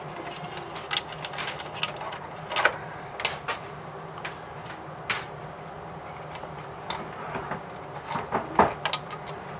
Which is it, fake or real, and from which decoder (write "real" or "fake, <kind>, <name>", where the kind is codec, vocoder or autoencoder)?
real